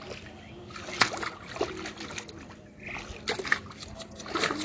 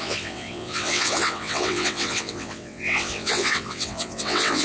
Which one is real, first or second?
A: first